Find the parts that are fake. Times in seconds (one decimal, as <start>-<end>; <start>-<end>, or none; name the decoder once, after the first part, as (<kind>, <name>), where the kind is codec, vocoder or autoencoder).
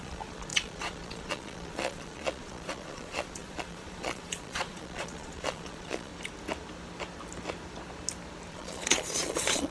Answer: 0.0-6.1 (vocoder, Vocos); 8.5-9.7